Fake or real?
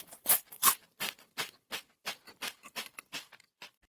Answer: fake